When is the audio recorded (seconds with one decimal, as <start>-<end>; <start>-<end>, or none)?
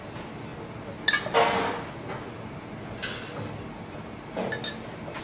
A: 0.0-5.2